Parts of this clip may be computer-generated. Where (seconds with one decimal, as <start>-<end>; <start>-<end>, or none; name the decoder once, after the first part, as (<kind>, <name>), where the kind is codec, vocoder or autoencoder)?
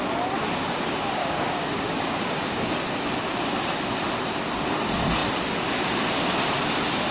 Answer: 1.2-2.7 (codec, DAC)